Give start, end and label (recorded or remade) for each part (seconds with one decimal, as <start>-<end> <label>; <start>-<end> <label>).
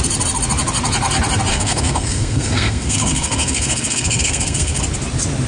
0.0-1.5 recorded; 1.5-4.8 remade; 4.8-5.5 recorded